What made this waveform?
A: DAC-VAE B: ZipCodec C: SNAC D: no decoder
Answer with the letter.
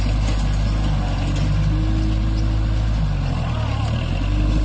D